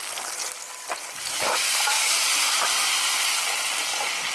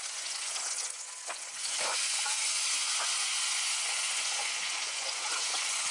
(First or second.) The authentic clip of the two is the first